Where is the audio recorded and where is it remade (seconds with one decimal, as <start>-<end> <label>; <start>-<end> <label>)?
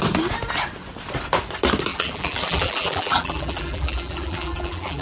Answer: 0.0-1.9 recorded; 1.9-5.0 remade